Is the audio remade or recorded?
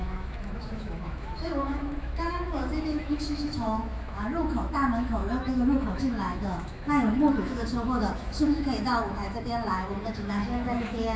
remade